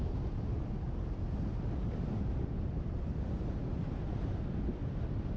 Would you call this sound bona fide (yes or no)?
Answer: yes